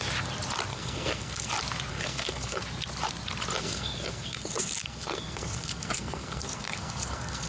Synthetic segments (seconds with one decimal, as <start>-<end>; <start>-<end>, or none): 0.7-1.5; 1.9-2.6; 3.6-7.5